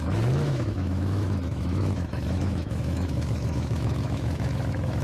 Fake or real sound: fake